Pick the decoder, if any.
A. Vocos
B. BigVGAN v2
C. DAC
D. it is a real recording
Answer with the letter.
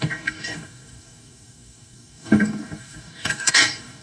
C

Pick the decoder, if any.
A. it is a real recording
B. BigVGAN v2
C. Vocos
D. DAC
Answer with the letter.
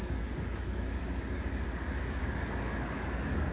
D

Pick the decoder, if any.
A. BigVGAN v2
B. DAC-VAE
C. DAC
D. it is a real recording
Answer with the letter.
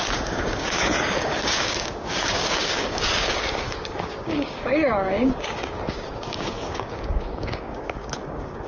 C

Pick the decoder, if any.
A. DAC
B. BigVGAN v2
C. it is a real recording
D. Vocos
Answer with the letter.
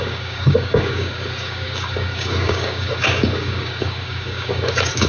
A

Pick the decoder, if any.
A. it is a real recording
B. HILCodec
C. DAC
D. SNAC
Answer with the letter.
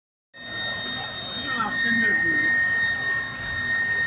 A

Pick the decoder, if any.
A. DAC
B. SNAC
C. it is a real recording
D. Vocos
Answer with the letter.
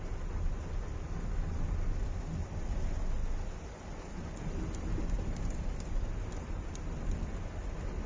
C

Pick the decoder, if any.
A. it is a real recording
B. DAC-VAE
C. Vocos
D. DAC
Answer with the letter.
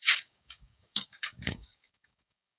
D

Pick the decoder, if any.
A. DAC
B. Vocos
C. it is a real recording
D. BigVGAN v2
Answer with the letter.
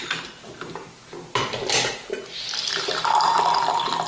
C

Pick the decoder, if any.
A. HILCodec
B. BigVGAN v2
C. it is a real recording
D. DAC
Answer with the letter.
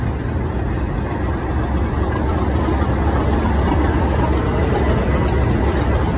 C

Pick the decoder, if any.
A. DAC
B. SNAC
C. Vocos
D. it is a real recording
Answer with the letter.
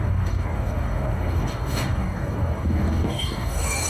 A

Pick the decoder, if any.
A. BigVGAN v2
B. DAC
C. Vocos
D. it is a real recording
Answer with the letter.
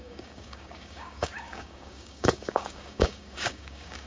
B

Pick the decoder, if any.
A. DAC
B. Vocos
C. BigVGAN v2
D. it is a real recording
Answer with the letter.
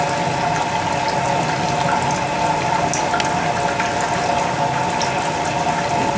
D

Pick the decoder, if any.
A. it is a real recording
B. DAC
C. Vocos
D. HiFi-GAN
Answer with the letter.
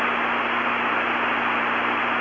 A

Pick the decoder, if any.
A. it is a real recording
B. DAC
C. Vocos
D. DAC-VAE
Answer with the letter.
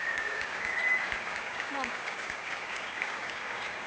B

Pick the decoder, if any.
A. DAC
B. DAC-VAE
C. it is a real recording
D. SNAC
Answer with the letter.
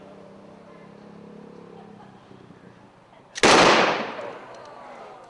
C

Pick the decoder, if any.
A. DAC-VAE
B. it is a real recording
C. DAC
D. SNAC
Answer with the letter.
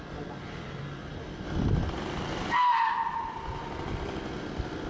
B